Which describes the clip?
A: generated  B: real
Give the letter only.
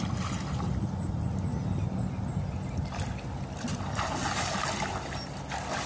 B